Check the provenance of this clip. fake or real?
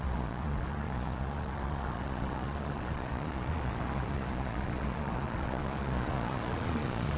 fake